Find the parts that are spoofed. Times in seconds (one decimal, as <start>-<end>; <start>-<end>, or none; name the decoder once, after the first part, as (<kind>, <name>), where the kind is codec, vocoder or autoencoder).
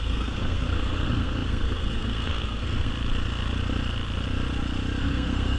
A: 0.0-2.9 (codec, SNAC); 5.0-5.6